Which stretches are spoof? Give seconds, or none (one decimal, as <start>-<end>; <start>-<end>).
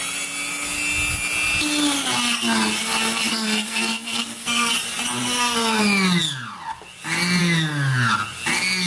3.3-4.7; 5.2-5.8